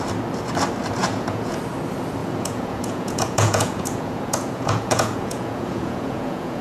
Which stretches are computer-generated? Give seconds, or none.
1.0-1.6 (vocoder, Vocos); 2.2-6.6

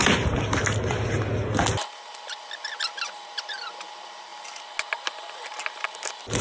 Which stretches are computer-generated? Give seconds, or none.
none

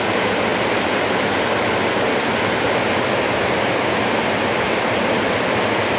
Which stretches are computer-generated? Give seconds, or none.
none

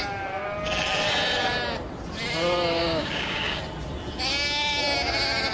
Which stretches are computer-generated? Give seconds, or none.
2.8-3.6 (codec, DAC)

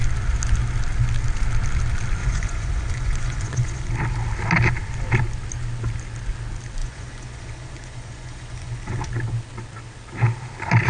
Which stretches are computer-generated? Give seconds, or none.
2.2-3.9 (vocoder, Vocos); 6.8-9.0

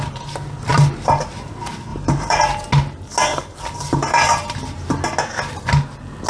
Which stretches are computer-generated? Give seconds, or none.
0.7-1.3 (vocoder, BigVGAN v2); 1.9-2.4; 3.3-4.9